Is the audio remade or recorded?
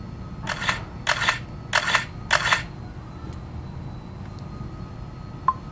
recorded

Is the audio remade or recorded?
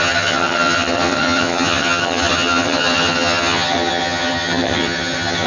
remade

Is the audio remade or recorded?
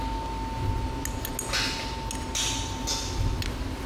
recorded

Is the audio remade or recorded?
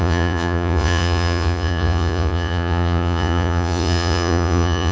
remade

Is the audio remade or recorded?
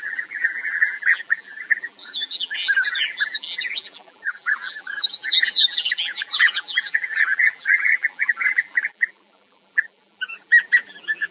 remade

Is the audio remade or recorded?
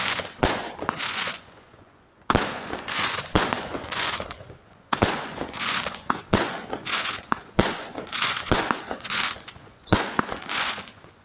remade